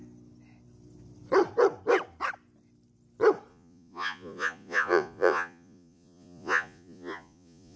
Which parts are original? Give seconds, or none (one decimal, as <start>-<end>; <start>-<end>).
0.0-3.5